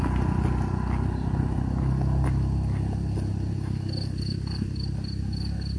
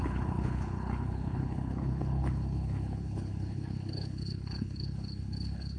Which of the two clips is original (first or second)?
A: first